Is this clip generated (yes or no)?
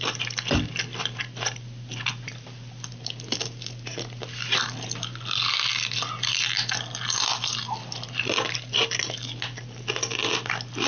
no